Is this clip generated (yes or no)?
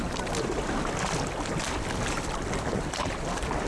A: no